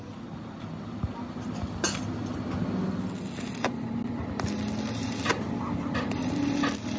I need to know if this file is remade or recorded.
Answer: recorded